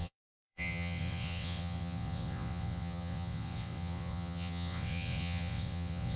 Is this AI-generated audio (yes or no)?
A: yes